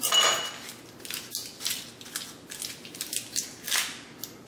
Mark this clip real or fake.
real